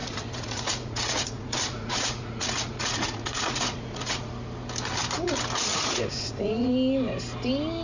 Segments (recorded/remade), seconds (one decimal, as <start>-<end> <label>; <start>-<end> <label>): 0.0-4.3 remade; 4.3-5.7 recorded; 5.7-6.7 remade; 6.7-7.8 recorded